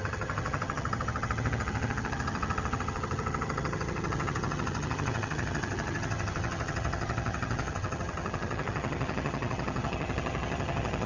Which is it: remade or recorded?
remade